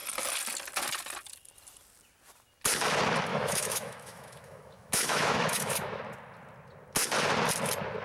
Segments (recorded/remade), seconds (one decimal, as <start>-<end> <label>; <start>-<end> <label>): 0.0-3.3 recorded; 3.3-6.0 remade; 6.0-8.0 recorded